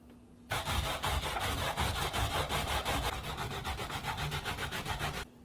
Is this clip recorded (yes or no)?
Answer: yes